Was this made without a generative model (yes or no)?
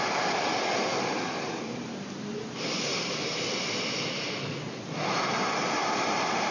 yes